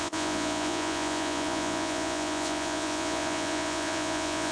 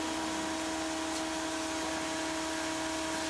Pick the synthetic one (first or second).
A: first